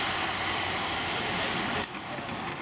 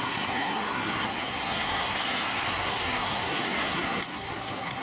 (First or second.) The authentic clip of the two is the first